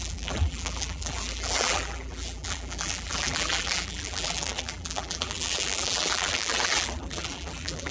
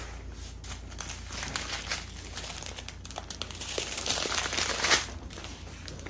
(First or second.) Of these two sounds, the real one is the second